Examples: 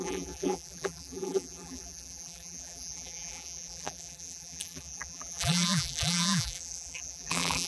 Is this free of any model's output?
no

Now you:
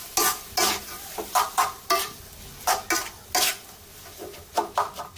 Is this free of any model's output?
yes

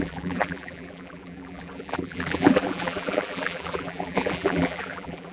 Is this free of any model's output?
no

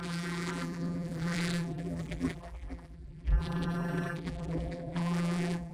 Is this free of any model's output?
no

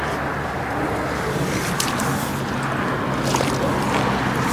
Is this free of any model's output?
yes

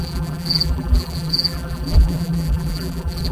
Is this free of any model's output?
no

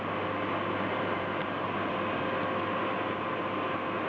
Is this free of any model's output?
no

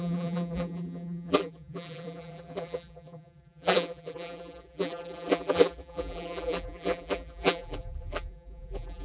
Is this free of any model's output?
no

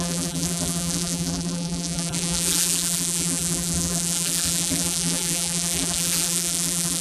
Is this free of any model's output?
no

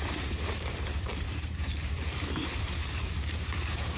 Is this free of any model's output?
no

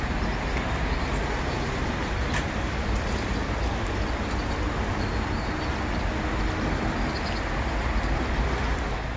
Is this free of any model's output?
yes